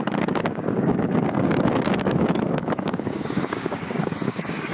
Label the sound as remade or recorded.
remade